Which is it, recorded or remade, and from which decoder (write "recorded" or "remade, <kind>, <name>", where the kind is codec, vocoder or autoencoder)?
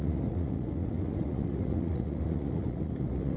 remade, vocoder, Vocos